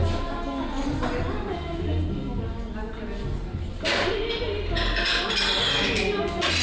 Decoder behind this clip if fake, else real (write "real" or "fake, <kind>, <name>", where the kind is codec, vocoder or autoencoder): real